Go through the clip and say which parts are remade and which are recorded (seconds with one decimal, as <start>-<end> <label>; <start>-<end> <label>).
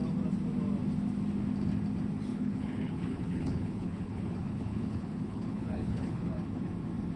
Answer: 0.0-2.3 recorded; 2.3-6.6 remade; 6.6-7.2 recorded